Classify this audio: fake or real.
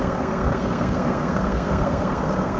fake